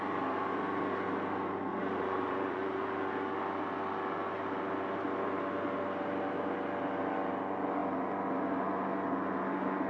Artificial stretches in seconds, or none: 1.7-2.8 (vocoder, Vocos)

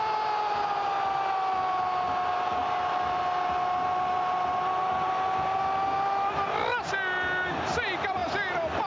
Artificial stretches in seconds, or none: none

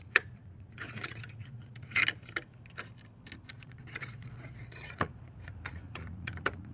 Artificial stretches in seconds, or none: 0.0-2.0 (vocoder, Vocos); 3.5-6.7

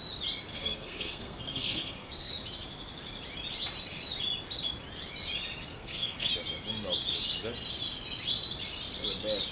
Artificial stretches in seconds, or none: 0.5-2.3 (codec, SNAC); 5.7-6.3

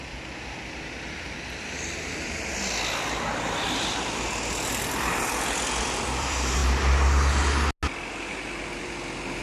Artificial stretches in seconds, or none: 0.0-6.6 (vocoder, BigVGAN v2); 8.1-9.4

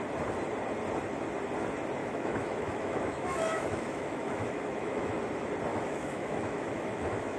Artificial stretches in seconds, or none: 2.0-5.2 (autoencoder, DAC-VAE); 5.7-7.4

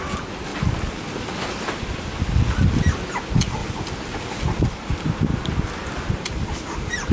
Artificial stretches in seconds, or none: none